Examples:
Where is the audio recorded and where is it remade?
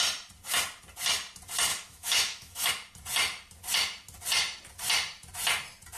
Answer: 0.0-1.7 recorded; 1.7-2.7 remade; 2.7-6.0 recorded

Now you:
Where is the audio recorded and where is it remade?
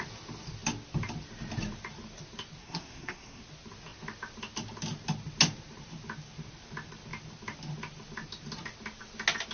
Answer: 0.0-2.6 recorded; 2.6-3.4 remade; 3.4-9.5 recorded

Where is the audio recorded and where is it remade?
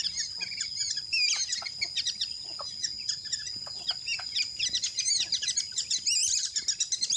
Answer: 0.0-7.2 recorded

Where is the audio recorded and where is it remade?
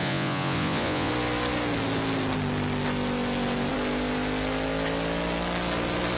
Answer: 0.0-1.1 remade; 1.1-6.2 recorded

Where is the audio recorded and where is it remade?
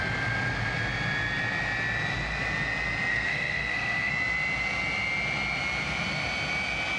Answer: 0.0-3.1 recorded; 3.1-4.1 remade; 4.1-7.0 recorded